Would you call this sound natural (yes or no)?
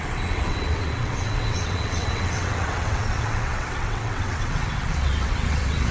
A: no